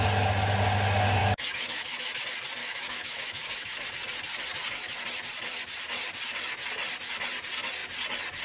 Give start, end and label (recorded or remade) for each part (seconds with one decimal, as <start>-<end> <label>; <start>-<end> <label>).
0.0-1.2 recorded; 1.2-2.2 remade; 2.2-2.6 recorded; 2.6-3.9 remade; 3.9-8.4 recorded